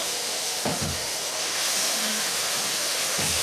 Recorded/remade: remade